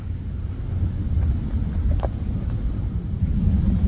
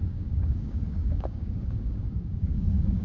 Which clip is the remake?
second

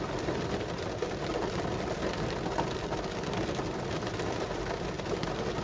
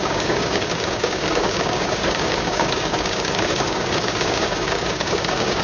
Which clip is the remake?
second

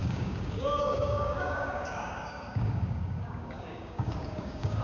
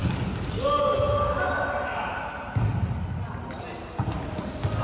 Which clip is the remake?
first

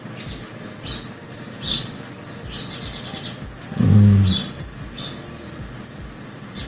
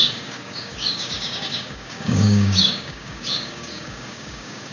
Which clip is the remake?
second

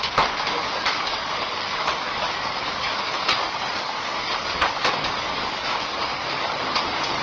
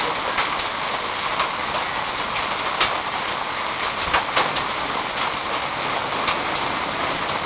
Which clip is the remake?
first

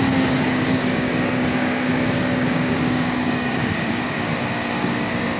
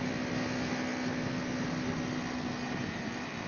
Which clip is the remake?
first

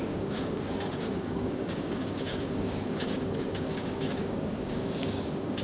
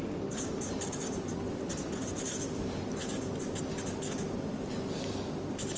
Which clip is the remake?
first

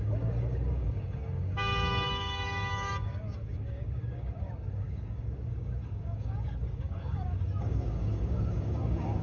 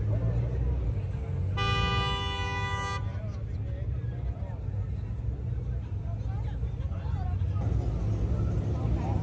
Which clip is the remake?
first